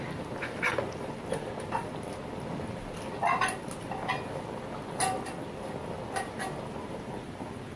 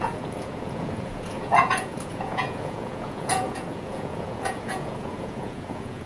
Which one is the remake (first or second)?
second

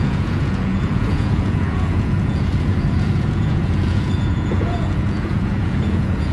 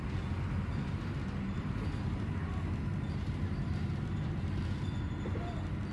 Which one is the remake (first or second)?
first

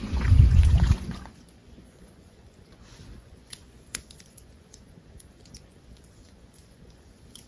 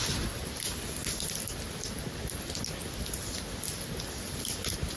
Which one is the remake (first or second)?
first